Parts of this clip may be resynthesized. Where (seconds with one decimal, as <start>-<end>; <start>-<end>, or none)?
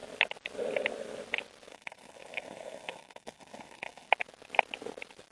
1.7-4.1